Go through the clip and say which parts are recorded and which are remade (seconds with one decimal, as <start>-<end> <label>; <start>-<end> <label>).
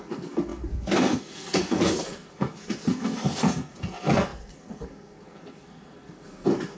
0.0-6.8 remade